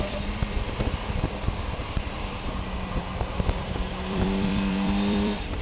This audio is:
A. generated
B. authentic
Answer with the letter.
A